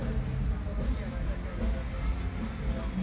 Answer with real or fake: real